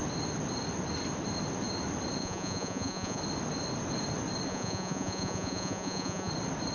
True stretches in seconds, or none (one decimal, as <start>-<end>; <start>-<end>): 0.0-2.2; 3.2-4.5; 6.3-6.7